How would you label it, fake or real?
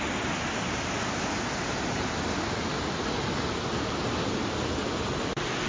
real